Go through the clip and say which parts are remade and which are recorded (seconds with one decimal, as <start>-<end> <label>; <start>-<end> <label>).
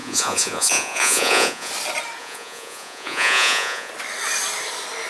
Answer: 0.0-1.7 remade; 1.7-2.2 recorded; 2.2-3.9 remade; 3.9-5.1 recorded